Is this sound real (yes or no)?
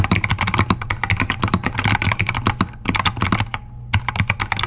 yes